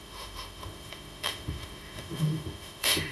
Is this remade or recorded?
remade